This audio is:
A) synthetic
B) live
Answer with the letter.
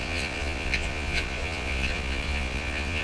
A